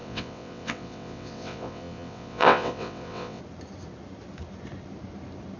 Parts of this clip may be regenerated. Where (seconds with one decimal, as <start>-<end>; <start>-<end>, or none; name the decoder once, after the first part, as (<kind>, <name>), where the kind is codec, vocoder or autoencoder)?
0.0-3.4 (vocoder, WaveNeXt)